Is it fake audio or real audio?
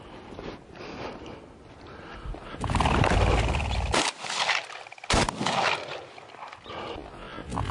real